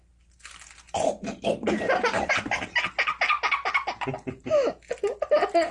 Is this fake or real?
real